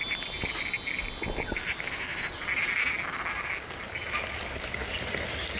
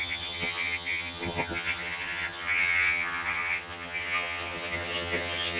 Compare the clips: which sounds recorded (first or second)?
first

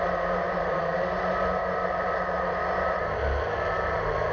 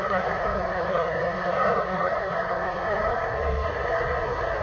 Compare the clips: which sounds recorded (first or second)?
first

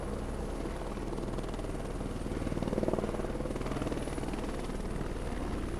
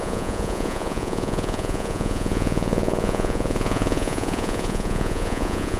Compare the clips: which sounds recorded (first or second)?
first